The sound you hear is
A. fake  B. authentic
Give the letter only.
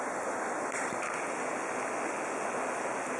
B